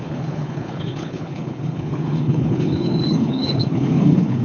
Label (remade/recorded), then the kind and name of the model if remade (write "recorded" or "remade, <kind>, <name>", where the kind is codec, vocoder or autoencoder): remade, codec, HILCodec